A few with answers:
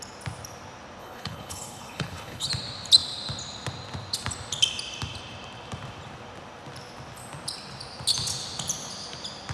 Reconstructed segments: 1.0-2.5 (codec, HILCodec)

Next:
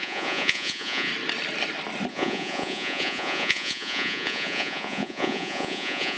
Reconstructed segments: 0.0-1.1 (vocoder, Vocos); 2.1-6.2

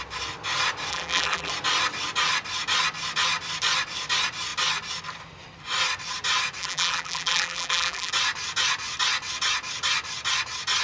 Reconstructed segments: 0.9-1.5 (vocoder, BigVGAN v2); 6.6-8.1

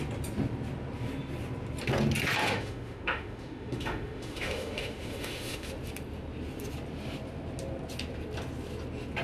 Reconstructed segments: 2.4-5.7 (autoencoder, DAC-VAE)

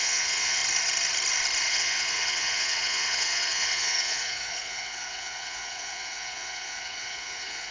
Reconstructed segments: 0.0-0.6 (vocoder, Vocos); 1.7-7.7

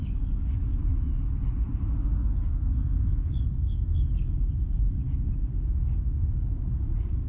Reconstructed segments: 0.0-0.8 (codec, DAC); 2.4-7.3

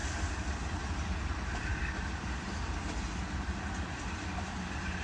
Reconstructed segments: none